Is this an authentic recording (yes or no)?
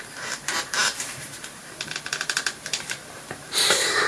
no